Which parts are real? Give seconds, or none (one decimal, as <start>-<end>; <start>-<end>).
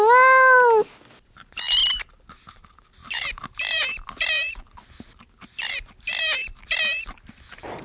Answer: 0.0-3.0; 3.8-7.8